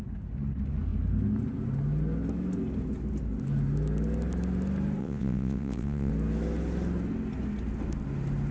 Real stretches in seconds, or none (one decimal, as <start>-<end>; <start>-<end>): 0.0-5.0; 6.1-8.5